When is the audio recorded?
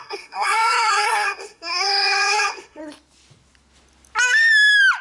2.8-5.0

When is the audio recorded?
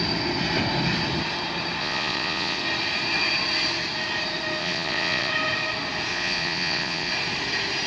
0.0-1.8; 2.6-4.6; 5.3-6.1; 7.1-7.9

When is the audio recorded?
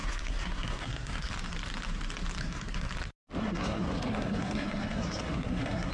1.3-2.4; 2.9-3.4